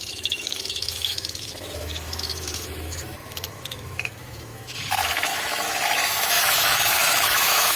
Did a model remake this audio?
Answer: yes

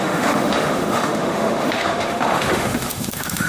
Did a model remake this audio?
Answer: yes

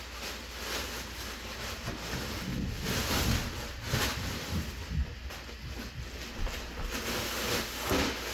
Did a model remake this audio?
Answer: no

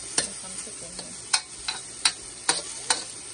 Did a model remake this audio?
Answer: no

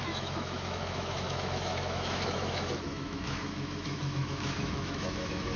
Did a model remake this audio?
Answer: yes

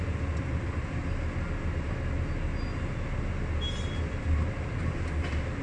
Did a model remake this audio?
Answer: no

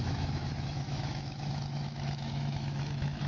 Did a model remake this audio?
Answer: yes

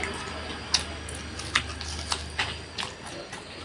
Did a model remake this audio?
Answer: no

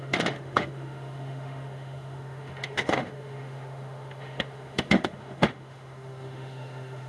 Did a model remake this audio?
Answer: yes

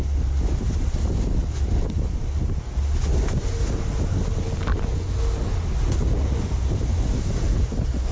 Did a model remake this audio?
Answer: no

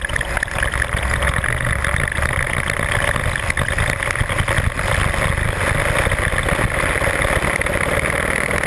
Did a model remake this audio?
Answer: no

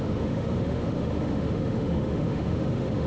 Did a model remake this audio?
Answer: yes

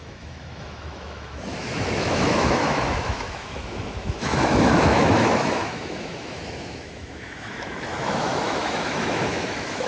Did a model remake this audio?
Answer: yes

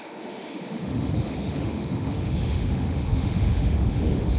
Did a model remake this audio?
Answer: yes